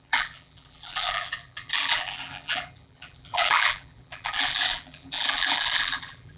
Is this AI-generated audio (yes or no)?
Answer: yes